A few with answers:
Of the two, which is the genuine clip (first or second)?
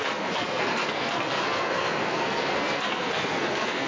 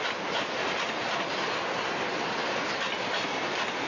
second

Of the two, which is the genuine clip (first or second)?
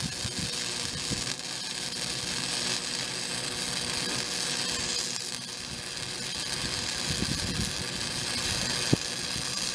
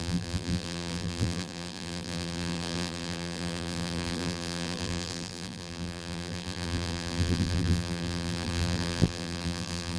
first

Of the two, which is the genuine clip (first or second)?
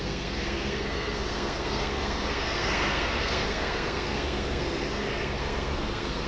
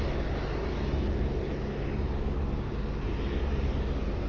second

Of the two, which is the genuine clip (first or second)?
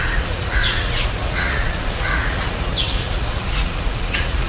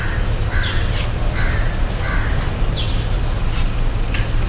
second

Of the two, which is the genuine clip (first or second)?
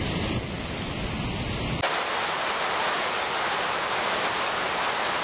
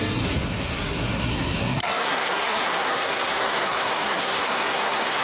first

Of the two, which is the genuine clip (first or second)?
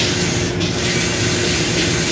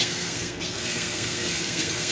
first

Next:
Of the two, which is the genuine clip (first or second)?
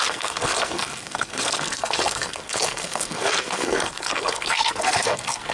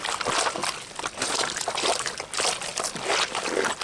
second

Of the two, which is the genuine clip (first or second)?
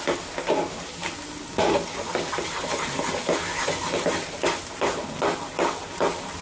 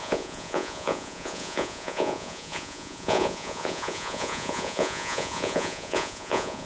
first